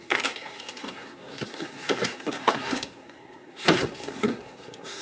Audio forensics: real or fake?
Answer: fake